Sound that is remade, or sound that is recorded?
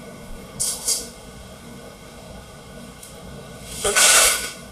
remade